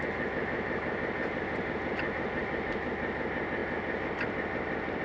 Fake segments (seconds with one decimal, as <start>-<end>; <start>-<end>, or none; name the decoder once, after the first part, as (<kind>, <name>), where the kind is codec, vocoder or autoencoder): none